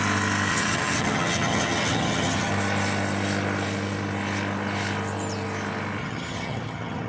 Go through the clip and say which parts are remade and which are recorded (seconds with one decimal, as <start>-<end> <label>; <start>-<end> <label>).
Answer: 0.0-0.5 recorded; 0.5-2.5 remade; 2.5-6.0 recorded; 6.0-7.1 remade